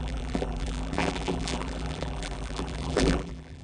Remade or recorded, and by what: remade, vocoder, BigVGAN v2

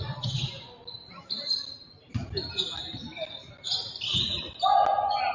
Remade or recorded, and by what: recorded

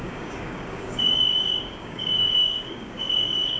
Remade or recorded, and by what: remade, codec, DAC